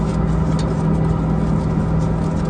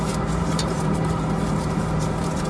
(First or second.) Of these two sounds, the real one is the first